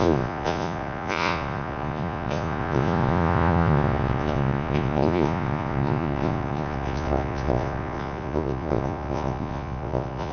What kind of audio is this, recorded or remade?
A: remade